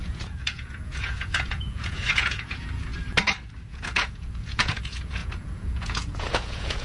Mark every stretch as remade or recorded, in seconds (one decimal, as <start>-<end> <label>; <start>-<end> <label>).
0.0-2.9 remade; 2.9-3.7 recorded; 3.7-6.8 remade